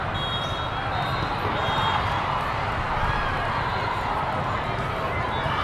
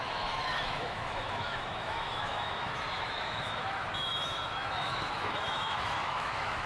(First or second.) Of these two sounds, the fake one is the second